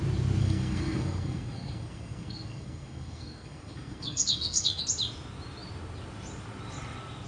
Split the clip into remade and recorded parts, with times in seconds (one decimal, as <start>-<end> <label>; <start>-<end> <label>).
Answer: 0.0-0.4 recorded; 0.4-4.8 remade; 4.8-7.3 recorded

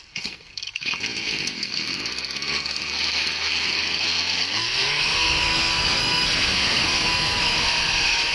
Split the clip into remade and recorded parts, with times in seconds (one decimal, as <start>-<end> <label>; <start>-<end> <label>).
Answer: 0.0-8.3 remade

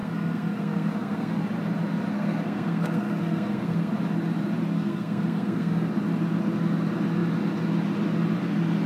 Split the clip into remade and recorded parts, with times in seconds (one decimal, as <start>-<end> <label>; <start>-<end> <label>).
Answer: 0.0-1.4 remade; 1.4-2.1 recorded; 2.1-3.9 remade; 3.9-4.7 recorded; 4.7-5.9 remade; 5.9-8.9 recorded

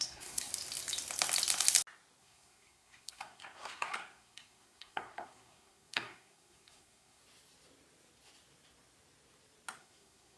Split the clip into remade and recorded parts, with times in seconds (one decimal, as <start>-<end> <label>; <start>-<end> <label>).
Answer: 0.0-0.5 remade; 0.5-2.2 recorded; 2.2-7.2 remade; 7.2-9.8 recorded; 9.8-10.4 remade